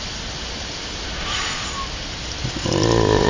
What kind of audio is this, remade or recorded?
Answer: recorded